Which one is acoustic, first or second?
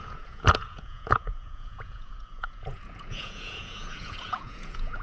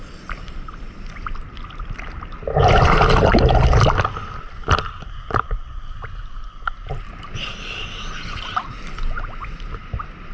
second